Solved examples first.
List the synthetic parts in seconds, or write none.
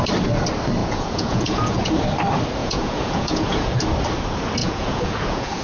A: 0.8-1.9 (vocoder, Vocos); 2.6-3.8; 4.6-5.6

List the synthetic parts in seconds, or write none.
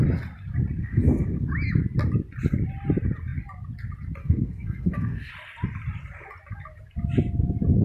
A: 0.8-1.5 (codec, SNAC); 4.2-5.3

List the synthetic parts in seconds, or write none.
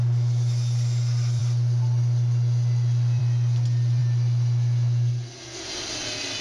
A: none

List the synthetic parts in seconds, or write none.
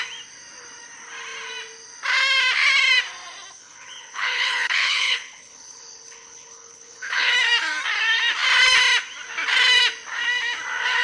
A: 3.6-7.3 (codec, HILCodec)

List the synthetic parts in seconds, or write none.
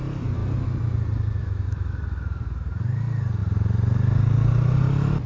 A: 1.4-2.0 (autoencoder, DAC-VAE)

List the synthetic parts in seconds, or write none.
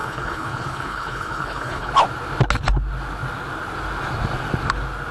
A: 0.0-1.9 (codec, HILCodec)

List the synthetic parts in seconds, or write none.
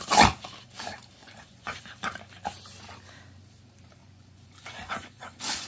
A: 1.2-1.8 (vocoder, Vocos); 4.0-5.7